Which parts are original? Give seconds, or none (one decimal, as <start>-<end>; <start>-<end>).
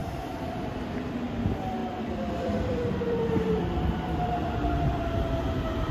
0.0-1.8; 5.0-5.9